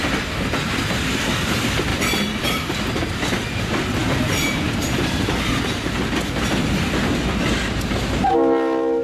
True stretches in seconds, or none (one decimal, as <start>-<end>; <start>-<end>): 0.0-1.9; 2.9-4.0; 5.5-9.0